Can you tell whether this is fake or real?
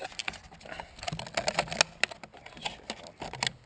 real